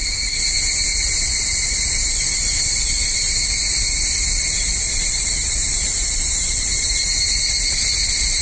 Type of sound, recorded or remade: recorded